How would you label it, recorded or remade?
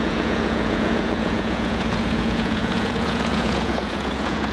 remade